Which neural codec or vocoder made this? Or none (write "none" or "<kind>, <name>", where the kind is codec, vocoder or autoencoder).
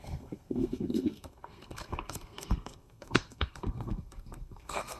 codec, SNAC